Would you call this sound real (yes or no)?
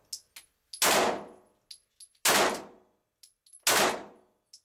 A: yes